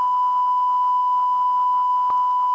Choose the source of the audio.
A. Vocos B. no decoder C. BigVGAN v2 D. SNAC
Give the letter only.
B